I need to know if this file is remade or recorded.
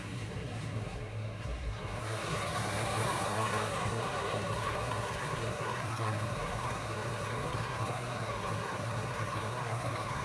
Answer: remade